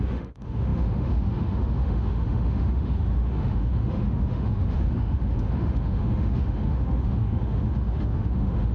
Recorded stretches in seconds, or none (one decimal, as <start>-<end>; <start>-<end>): none